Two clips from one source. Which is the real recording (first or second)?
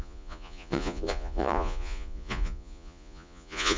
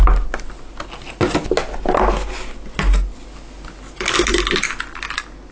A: second